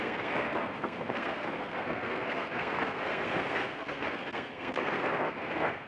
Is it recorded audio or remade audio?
remade